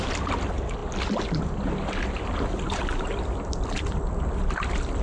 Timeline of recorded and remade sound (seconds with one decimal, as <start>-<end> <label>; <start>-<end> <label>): 0.0-5.0 recorded